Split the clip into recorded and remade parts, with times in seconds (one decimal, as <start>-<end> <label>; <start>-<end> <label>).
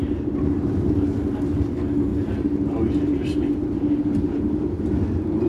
0.0-0.8 remade; 0.8-2.1 recorded; 2.1-5.0 remade; 5.0-5.5 recorded